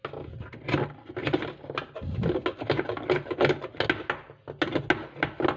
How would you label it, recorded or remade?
recorded